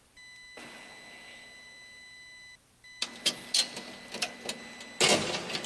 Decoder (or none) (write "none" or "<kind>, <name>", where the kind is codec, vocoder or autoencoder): none